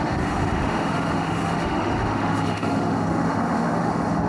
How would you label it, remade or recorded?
remade